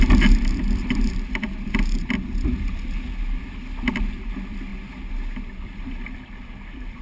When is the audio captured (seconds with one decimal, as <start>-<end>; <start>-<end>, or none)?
4.7-5.6